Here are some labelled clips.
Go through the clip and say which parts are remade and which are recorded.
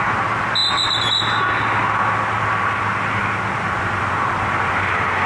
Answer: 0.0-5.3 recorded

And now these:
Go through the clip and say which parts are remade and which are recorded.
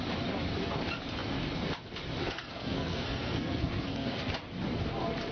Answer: 0.0-2.2 recorded; 2.2-4.3 remade; 4.3-5.3 recorded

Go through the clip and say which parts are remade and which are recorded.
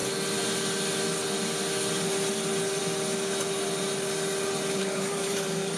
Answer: 0.0-4.8 recorded; 4.8-5.8 remade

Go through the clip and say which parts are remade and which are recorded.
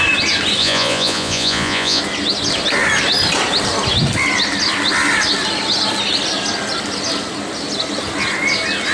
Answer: 0.0-0.6 recorded; 0.6-2.0 remade; 2.0-8.9 recorded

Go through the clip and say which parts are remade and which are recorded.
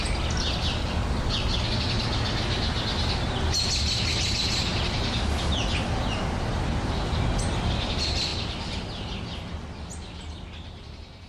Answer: 0.0-11.3 recorded